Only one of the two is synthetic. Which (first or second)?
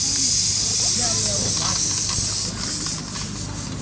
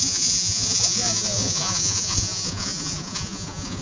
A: second